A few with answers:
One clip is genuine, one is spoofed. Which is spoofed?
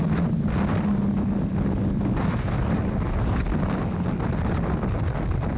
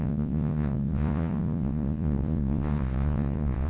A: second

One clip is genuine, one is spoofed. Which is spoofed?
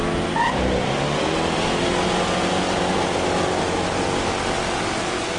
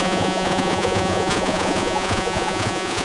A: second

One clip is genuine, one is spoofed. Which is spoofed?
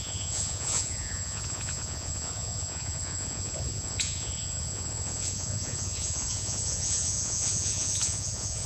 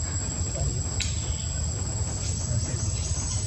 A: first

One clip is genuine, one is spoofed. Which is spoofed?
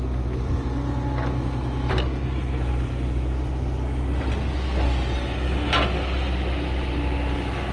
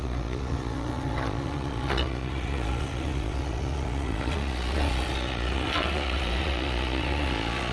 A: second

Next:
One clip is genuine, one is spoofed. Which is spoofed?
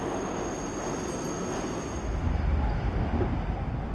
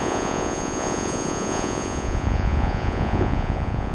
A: second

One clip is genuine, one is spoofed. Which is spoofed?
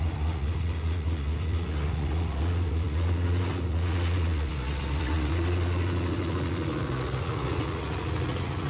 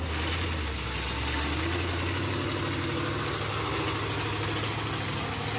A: first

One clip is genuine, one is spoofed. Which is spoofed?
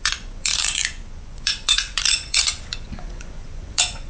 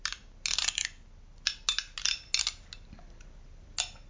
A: first